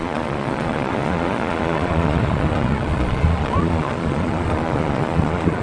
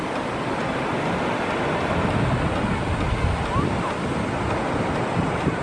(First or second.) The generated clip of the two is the first